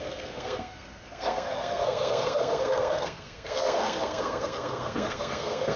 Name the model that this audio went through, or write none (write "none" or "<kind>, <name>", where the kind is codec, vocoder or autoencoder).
codec, SNAC